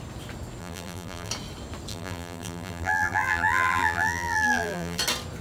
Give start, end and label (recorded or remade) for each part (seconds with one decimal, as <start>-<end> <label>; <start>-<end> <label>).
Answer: 0.0-0.6 recorded; 0.6-1.3 remade; 1.3-1.9 recorded; 1.9-5.0 remade; 5.0-5.4 recorded